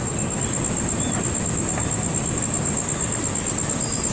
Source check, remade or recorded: recorded